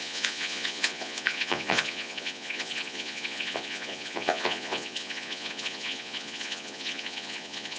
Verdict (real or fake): fake